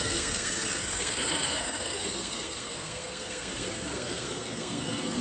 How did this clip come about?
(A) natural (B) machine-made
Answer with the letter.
B